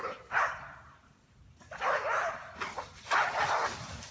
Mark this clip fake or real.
real